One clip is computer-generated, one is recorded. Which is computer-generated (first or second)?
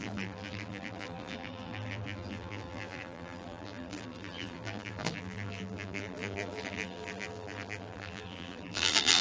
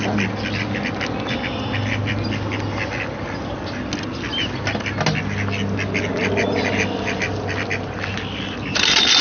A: first